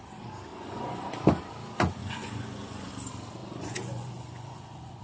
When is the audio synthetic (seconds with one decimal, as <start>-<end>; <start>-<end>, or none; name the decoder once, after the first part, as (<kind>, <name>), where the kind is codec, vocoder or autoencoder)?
0.5-1.1 (vocoder, Vocos); 2.0-2.9; 3.4-5.0